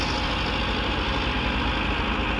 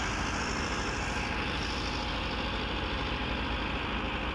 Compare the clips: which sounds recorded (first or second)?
first